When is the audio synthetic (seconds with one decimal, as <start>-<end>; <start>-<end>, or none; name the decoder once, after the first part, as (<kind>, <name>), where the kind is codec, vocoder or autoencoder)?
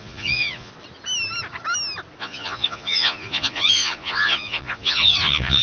0.0-0.7 (vocoder, Vocos); 2.2-5.6